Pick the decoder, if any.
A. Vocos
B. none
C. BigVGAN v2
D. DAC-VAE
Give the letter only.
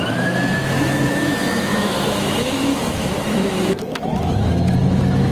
D